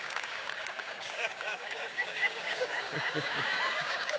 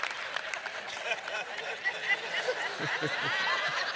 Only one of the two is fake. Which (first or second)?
first